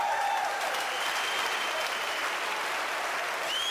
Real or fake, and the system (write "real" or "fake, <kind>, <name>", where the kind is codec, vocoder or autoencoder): real